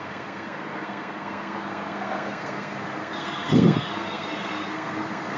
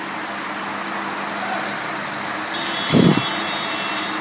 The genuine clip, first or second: second